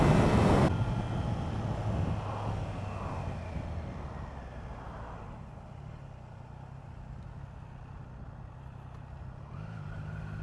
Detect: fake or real real